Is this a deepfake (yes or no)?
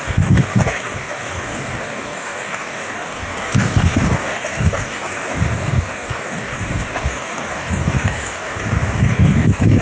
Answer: yes